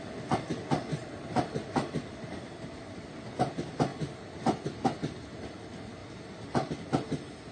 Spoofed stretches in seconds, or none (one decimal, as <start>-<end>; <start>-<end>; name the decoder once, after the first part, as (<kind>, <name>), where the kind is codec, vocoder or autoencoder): 0.9-2.0 (vocoder, BigVGAN v2)